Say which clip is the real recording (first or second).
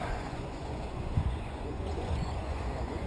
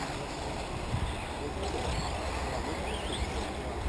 second